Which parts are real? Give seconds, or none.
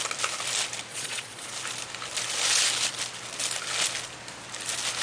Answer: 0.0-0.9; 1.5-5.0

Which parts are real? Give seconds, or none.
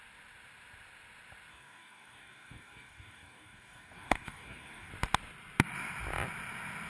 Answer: 0.0-1.5; 4.9-6.9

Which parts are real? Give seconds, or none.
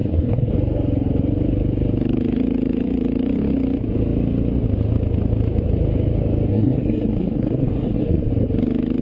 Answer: 0.5-6.5; 8.3-9.0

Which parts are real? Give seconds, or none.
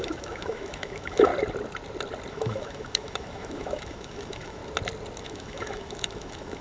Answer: 1.3-2.3; 4.6-5.2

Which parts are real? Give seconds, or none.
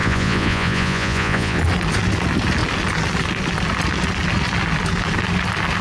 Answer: 1.6-5.8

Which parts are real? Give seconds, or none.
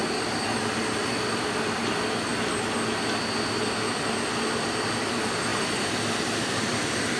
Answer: 0.0-1.0; 2.3-5.1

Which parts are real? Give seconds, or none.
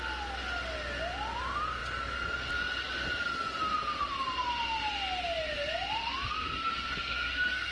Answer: 0.0-6.0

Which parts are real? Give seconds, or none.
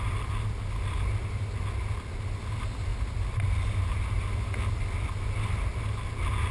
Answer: 0.0-6.5